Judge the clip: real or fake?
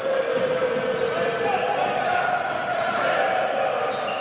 fake